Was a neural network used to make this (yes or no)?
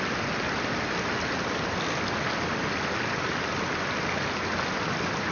no